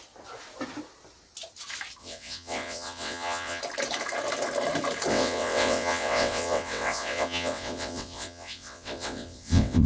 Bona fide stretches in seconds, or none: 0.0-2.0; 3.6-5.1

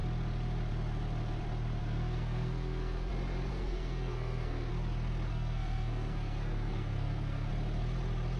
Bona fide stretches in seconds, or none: 0.0-1.8; 3.1-3.5; 4.7-5.3; 7.5-8.4

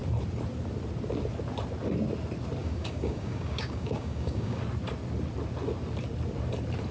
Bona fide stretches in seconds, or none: 0.0-2.6; 4.6-6.9

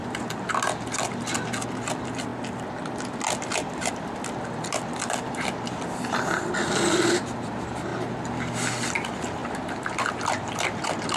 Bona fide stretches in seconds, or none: 0.0-1.8; 2.3-3.7; 7.9-8.8

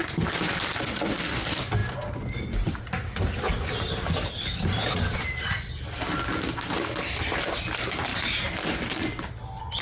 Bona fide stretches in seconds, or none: 1.3-9.8

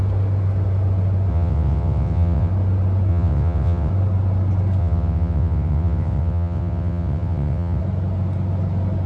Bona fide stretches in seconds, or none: 0.0-1.3; 2.5-3.1; 3.9-4.8; 7.8-9.1

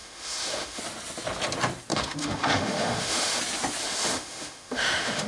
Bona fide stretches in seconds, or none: 0.8-1.9; 3.4-3.8

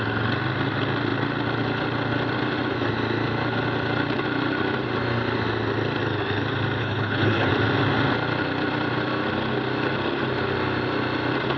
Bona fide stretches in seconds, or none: 0.0-6.8; 7.5-11.6